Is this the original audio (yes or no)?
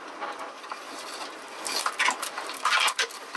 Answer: yes